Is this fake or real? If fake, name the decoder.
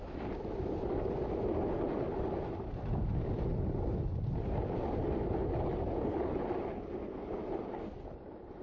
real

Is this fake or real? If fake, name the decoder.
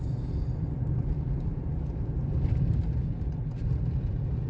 real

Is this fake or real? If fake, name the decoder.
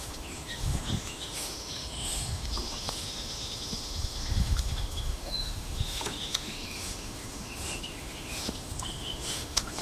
fake, autoencoder, DAC-VAE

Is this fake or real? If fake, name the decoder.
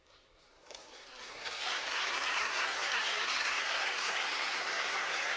fake, codec, SNAC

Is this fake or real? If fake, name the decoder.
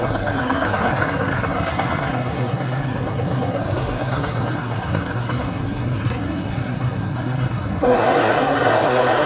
fake, codec, SNAC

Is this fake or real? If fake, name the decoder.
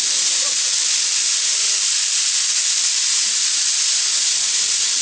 real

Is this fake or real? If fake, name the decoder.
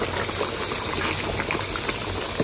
real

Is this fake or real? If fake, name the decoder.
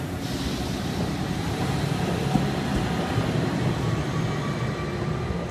real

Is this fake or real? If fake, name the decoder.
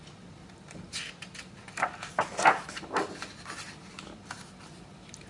real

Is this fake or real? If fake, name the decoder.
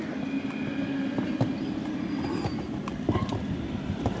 real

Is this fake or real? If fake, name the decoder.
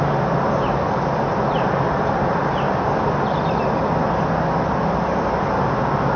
real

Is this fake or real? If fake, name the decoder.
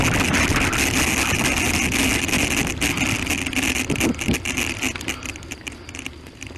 real